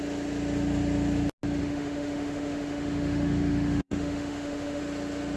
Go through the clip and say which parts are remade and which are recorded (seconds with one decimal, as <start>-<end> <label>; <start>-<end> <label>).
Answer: 0.0-1.6 recorded; 1.6-4.8 remade; 4.8-5.4 recorded